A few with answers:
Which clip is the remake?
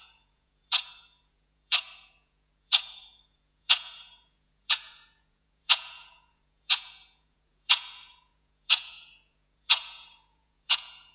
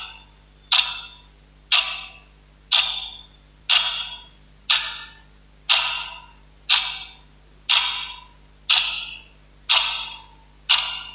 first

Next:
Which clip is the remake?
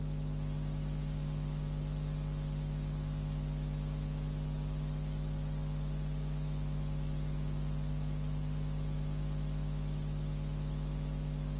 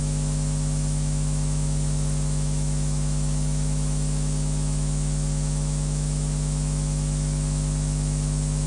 second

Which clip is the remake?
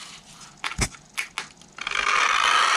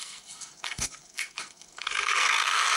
second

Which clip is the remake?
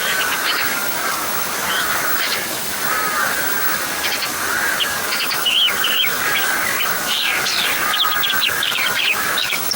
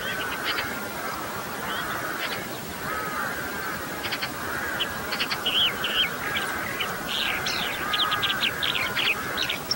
first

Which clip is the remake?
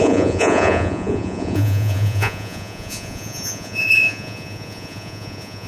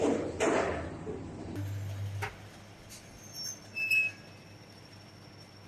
first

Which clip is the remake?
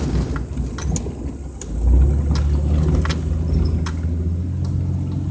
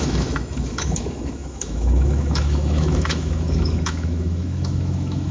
second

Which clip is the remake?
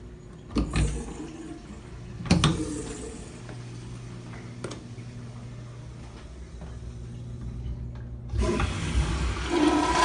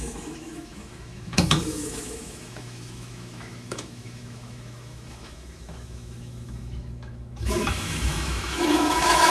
second